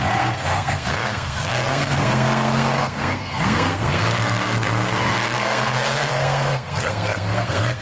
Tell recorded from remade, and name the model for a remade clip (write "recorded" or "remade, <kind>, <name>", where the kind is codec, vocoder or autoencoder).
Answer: remade, codec, SNAC